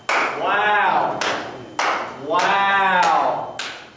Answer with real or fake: real